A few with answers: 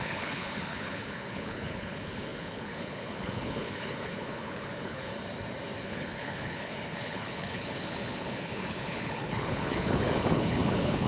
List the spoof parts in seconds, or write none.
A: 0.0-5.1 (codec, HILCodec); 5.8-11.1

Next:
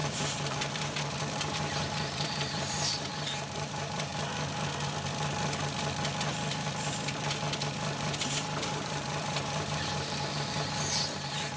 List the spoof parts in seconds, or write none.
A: 0.0-4.1 (vocoder, BigVGAN v2); 8.6-11.6

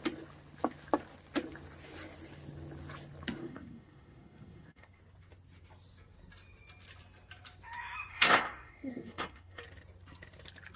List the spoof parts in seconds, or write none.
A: 3.4-5.0 (codec, SNAC); 8.1-9.6

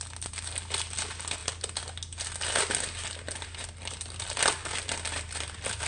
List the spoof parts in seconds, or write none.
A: none

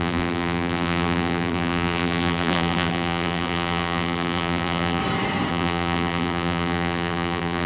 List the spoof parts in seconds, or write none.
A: 0.0-5.0 (vocoder, BigVGAN v2); 5.5-7.7

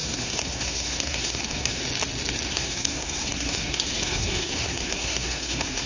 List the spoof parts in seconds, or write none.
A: 0.0-1.8 (codec, SNAC); 2.5-5.9

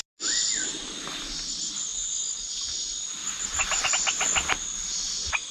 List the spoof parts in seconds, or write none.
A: 3.2-3.9 (vocoder, BigVGAN v2)

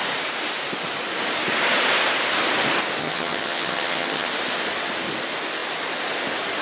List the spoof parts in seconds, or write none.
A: 3.0-4.3 (vocoder, HiFi-GAN)